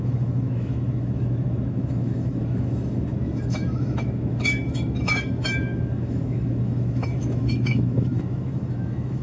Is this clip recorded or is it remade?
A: remade